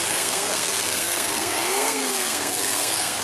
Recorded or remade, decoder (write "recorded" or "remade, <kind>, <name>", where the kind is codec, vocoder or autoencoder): remade, codec, SNAC